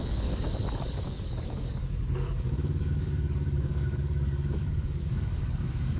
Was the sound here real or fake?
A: fake